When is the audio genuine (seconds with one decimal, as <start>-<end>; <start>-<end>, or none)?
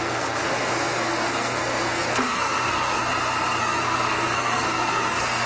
3.1-3.6